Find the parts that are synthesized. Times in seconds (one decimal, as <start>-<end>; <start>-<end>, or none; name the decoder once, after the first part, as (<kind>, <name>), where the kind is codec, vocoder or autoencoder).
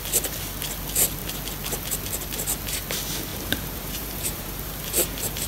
3.3-5.5 (vocoder, BigVGAN v2)